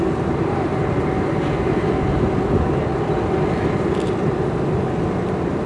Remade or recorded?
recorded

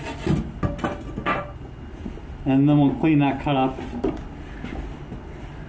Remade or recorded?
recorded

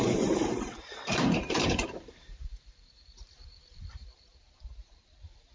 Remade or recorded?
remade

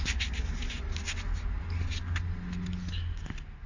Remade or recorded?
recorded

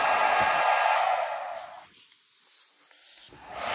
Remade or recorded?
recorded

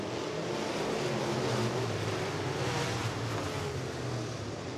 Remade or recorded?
recorded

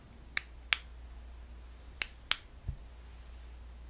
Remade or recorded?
recorded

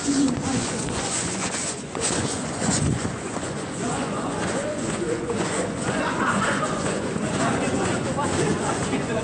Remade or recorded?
remade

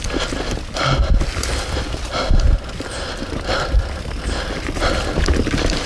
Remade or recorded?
recorded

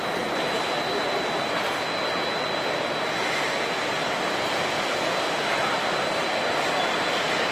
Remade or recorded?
recorded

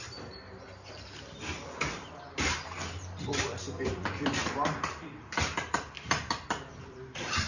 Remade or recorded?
remade